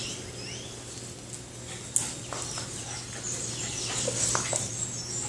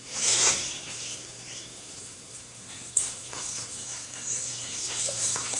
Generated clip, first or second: second